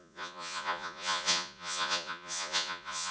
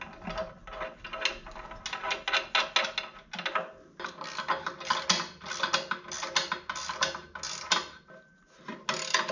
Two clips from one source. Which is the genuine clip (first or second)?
second